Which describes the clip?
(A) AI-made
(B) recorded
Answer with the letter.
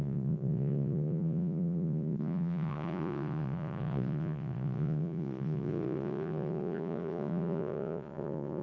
A